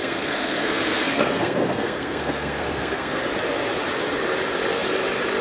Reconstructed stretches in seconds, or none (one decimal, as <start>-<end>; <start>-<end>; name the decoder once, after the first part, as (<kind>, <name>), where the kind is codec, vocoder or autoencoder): 0.0-3.2 (codec, SNAC)